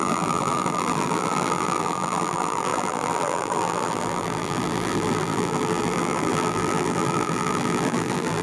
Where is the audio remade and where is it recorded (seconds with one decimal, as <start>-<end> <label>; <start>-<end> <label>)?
0.0-8.4 remade